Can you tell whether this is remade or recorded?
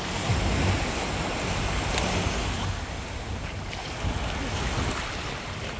recorded